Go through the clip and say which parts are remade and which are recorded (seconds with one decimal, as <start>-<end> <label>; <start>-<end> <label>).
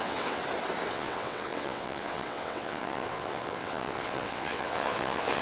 0.0-0.4 remade; 0.4-0.9 recorded; 0.9-5.4 remade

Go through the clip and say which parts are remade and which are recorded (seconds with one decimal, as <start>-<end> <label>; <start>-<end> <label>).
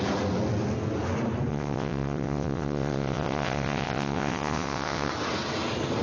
0.0-1.5 recorded; 1.5-5.1 remade; 5.1-6.0 recorded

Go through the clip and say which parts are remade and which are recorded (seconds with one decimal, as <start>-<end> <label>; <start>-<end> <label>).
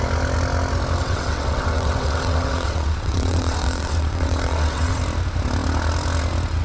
0.0-1.0 recorded; 1.0-5.0 remade; 5.0-6.6 recorded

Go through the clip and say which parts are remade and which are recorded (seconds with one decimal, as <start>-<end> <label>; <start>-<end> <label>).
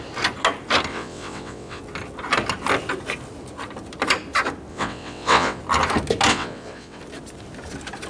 0.0-0.9 recorded; 0.9-1.8 remade; 1.8-4.7 recorded; 4.7-5.6 remade; 5.6-6.3 recorded; 6.3-7.0 remade; 7.0-8.1 recorded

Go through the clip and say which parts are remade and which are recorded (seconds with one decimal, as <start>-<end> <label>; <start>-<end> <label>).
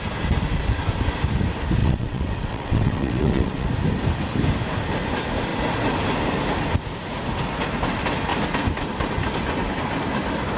0.0-1.8 recorded; 1.8-3.7 remade; 3.7-10.6 recorded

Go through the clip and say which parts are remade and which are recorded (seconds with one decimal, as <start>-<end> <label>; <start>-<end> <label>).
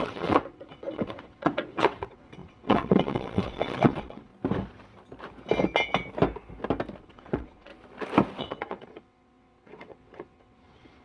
0.0-4.3 remade; 4.3-7.0 recorded; 7.0-7.7 remade; 7.7-8.4 recorded; 8.4-11.0 remade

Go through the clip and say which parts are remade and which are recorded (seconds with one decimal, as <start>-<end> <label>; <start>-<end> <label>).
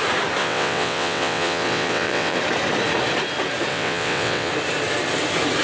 0.0-0.4 recorded; 0.4-2.4 remade; 2.4-3.7 recorded; 3.7-4.5 remade; 4.5-5.6 recorded